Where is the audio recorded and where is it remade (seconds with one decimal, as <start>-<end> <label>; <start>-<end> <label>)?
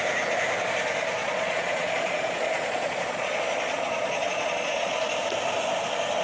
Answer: 0.0-1.2 recorded; 1.2-4.9 remade; 4.9-6.2 recorded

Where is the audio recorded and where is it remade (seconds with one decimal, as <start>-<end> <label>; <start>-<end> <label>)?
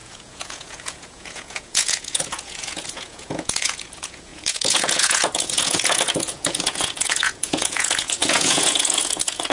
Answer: 0.0-9.5 remade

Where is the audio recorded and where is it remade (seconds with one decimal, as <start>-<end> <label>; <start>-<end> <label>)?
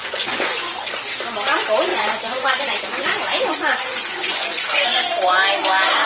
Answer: 0.0-0.9 remade; 0.9-1.9 recorded; 1.9-5.0 remade; 5.0-6.1 recorded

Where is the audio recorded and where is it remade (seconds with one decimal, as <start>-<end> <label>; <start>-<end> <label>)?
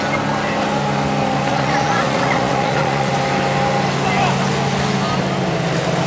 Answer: 0.0-1.5 recorded; 1.5-3.1 remade; 3.1-6.1 recorded